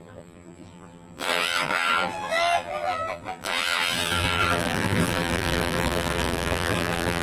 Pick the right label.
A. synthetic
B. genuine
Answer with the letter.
A